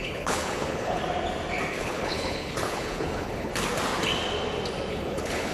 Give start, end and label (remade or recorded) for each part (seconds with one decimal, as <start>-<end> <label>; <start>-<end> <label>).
0.0-1.0 remade; 1.0-1.7 recorded; 1.7-3.5 remade; 3.5-4.9 recorded; 4.9-5.5 remade